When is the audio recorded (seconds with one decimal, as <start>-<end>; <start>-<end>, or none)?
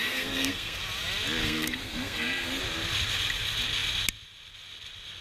0.8-1.4; 2.6-5.2